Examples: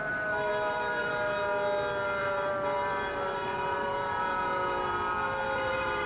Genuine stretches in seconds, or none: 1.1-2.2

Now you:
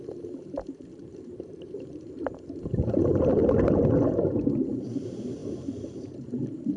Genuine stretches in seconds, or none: 3.4-4.8

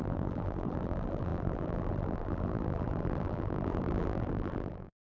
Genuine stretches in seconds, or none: none

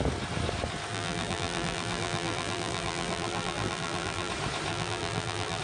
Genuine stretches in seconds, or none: 0.0-0.9; 4.3-4.7

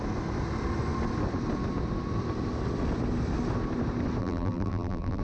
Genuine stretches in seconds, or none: 0.0-4.2

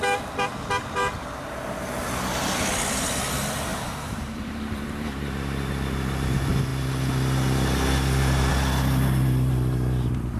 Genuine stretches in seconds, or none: 0.0-3.7; 6.3-10.4

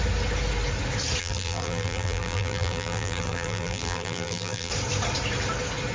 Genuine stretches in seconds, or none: 0.0-1.2; 4.7-5.9